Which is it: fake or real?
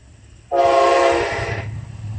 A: real